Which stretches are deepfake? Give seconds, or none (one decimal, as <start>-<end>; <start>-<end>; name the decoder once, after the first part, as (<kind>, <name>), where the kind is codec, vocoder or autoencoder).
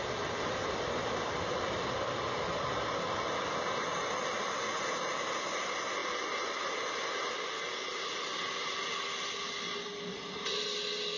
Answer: 10.1-10.6 (vocoder, Vocos)